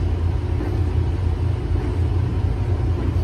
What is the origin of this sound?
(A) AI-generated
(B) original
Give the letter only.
B